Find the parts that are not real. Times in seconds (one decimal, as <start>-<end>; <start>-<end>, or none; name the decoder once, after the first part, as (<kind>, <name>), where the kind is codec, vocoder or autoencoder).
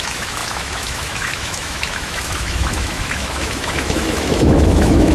0.0-5.1 (autoencoder, DAC-VAE)